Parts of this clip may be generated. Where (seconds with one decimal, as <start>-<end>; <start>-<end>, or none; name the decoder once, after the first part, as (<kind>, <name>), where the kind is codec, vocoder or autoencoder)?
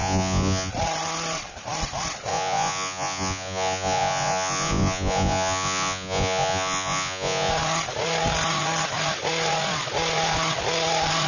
0.0-0.7 (vocoder, Vocos); 2.3-7.5